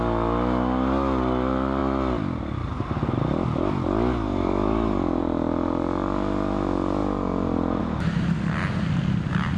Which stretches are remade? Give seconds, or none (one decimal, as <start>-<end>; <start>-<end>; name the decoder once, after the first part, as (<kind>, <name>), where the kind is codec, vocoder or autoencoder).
none